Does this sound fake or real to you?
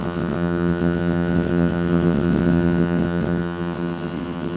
fake